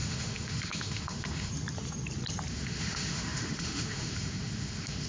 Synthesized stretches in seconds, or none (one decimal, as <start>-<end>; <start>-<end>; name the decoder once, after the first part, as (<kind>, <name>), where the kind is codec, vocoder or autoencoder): 0.0-1.5 (autoencoder, DAC-VAE); 2.5-5.1